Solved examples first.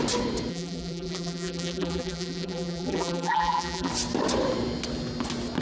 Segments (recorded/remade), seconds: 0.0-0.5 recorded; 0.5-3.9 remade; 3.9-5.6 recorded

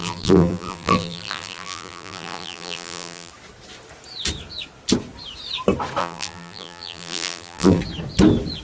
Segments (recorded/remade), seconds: 0.0-3.3 remade; 3.3-6.0 recorded; 6.0-7.8 remade; 7.8-8.6 recorded

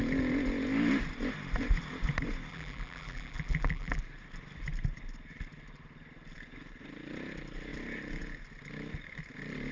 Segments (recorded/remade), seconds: 0.0-2.5 recorded; 2.5-4.0 remade; 4.0-9.7 recorded